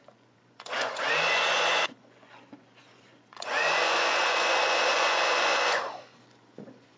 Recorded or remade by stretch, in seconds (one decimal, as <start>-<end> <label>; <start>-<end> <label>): 0.0-7.0 remade